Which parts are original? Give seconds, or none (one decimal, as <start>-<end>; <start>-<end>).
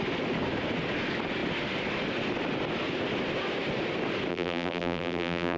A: 0.0-4.3